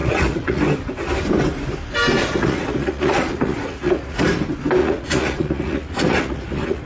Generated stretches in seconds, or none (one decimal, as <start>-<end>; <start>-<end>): 0.0-0.6; 2.2-4.2; 4.8-6.9